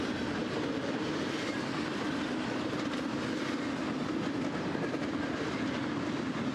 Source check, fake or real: real